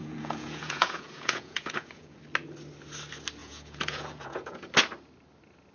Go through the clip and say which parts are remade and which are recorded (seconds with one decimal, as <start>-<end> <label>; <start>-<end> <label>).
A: 0.0-2.2 remade; 2.2-3.4 recorded; 3.4-4.7 remade; 4.7-5.7 recorded